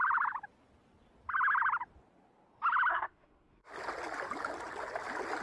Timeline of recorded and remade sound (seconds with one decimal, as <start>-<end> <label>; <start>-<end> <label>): 0.0-2.9 recorded; 2.9-3.7 remade; 3.7-5.4 recorded